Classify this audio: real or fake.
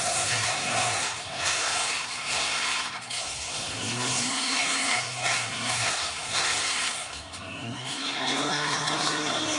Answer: fake